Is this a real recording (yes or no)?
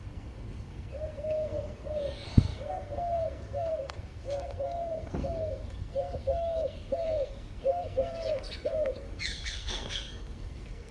no